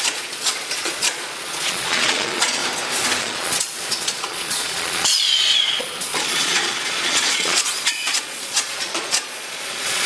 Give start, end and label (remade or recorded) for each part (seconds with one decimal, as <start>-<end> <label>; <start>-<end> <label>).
0.0-2.6 remade; 2.6-3.2 recorded; 3.2-10.1 remade